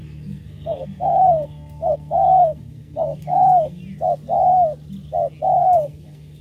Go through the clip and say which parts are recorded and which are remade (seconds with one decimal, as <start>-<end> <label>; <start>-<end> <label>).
0.0-3.8 remade; 3.8-5.6 recorded; 5.6-6.4 remade